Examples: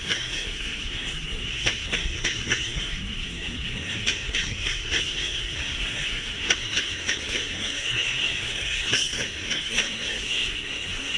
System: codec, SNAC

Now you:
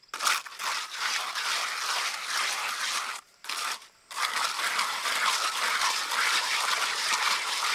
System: none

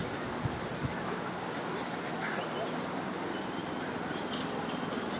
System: none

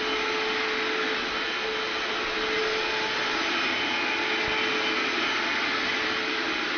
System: none